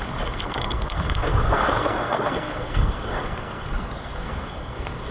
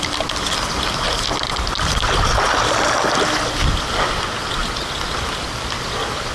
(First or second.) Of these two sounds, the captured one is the second